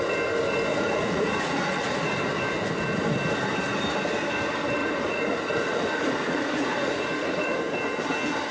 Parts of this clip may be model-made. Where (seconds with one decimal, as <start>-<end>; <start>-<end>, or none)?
0.7-2.3; 4.8-7.6